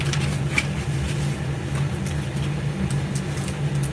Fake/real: real